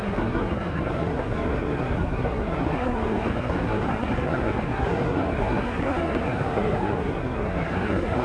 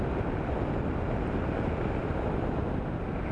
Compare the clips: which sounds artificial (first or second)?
first